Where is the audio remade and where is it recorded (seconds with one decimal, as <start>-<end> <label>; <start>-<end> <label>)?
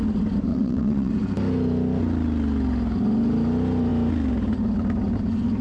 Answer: 0.0-0.5 recorded; 0.5-1.1 remade; 1.1-5.6 recorded